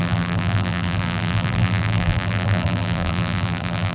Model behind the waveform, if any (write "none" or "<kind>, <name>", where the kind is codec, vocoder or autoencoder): vocoder, BigVGAN v2